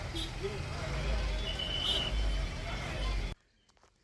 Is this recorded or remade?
recorded